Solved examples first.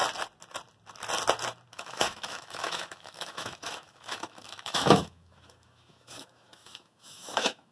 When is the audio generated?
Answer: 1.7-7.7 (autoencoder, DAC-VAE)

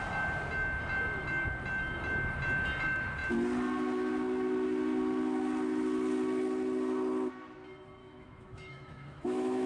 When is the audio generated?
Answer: 8.0-9.7 (autoencoder, DAC-VAE)

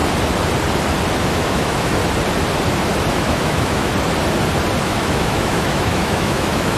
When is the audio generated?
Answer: 1.2-2.0 (autoencoder, DAC-VAE); 3.1-3.9; 4.8-6.8

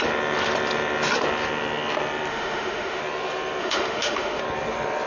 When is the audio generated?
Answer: 2.3-3.0 (autoencoder, DAC-VAE); 3.6-4.4